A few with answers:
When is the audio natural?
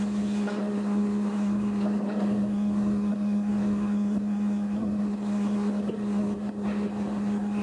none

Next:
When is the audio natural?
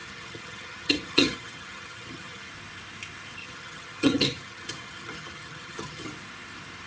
2.5-3.4; 6.1-6.9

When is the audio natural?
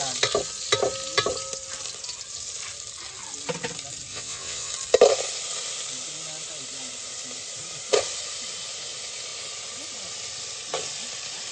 0.0-4.1; 4.7-11.5